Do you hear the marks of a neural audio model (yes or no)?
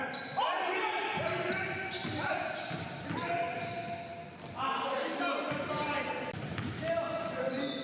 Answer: no